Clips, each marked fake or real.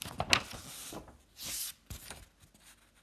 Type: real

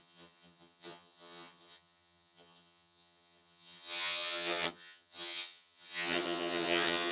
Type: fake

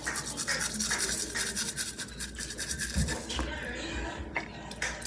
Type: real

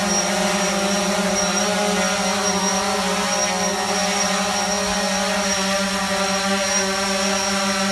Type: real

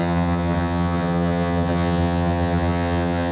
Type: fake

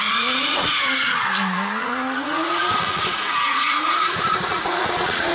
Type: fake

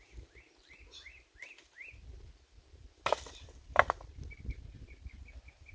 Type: fake